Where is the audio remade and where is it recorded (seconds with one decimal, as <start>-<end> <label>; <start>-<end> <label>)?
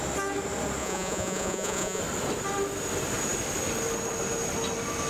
0.0-0.8 recorded; 0.8-2.0 remade; 2.0-5.1 recorded